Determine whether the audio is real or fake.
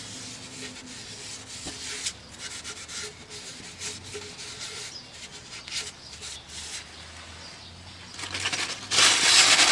real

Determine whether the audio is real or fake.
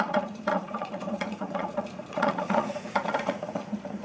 fake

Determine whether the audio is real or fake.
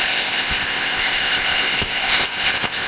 fake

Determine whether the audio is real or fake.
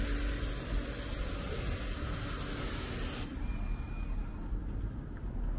real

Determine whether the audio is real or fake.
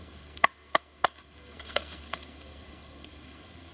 fake